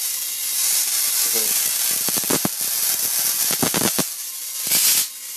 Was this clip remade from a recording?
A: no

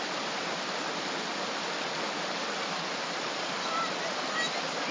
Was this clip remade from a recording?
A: no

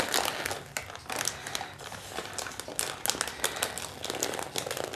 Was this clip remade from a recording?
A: no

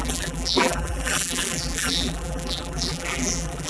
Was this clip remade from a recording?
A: yes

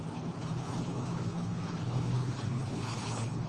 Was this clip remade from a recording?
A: yes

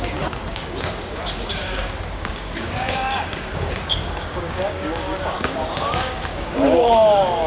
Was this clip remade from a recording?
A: yes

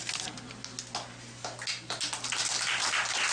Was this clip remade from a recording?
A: no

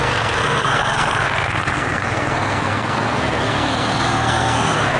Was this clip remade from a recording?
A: yes